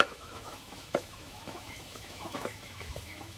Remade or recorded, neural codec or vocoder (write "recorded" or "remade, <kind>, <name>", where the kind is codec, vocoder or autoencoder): remade, autoencoder, DAC-VAE